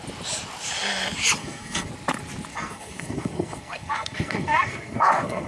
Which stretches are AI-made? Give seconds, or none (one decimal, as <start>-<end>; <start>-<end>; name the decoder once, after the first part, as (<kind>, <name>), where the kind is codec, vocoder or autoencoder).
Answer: 1.4-1.9 (codec, SNAC); 2.5-5.5